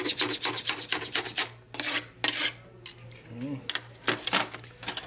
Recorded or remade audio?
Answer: recorded